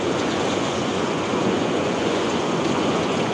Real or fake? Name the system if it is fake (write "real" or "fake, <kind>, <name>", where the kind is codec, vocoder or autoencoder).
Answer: fake, vocoder, Vocos